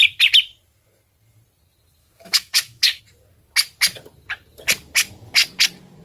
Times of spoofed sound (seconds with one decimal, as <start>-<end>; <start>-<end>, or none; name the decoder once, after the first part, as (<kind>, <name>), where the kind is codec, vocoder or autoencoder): 2.0-3.0 (autoencoder, DAC-VAE)